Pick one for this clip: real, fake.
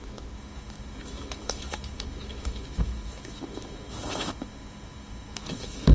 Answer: fake